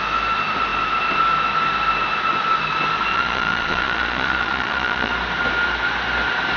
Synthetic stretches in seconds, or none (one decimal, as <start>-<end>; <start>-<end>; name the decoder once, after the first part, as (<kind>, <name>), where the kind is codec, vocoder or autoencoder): 3.1-5.1 (vocoder, Vocos)